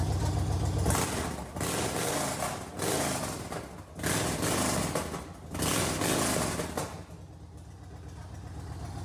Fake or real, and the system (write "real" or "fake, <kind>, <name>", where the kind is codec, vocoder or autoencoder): real